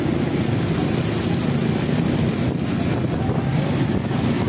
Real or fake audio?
real